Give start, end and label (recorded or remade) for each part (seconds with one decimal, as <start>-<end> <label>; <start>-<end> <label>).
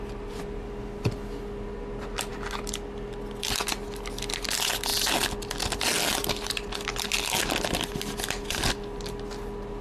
0.0-9.8 recorded